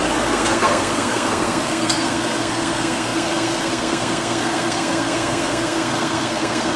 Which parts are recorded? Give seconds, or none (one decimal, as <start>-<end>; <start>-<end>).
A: none